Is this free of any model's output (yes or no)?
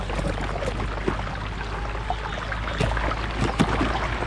yes